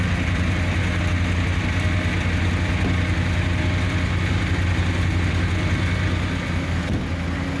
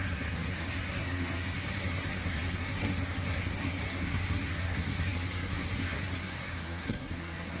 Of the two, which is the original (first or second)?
first